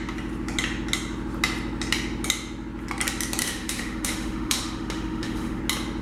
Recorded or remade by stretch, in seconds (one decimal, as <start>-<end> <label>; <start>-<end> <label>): 0.0-3.4 recorded; 3.4-5.6 remade; 5.6-6.0 recorded